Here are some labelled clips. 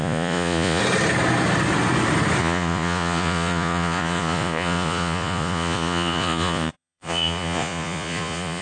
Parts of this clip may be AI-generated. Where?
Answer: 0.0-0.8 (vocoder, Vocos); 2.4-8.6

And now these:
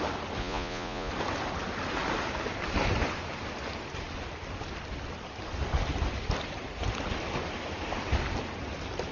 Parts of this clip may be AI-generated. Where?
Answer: 0.4-1.1 (vocoder, Vocos)

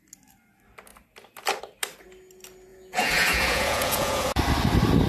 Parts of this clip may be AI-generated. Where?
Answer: 2.7-4.4 (vocoder, Vocos)

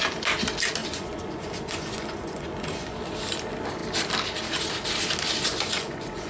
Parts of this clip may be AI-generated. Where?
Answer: 0.8-3.0 (vocoder, Vocos); 5.5-6.3